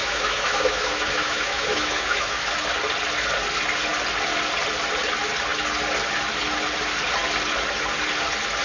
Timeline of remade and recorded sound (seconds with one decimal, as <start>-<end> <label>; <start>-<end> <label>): 0.0-2.5 remade; 2.5-8.6 recorded